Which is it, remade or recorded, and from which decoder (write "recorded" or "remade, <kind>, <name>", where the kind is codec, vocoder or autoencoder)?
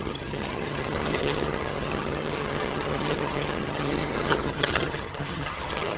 remade, vocoder, HiFi-GAN